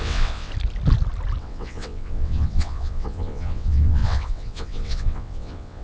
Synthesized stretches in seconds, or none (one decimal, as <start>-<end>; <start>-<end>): 0.0-0.5; 1.4-5.8